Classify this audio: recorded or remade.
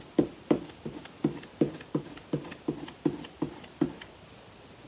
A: recorded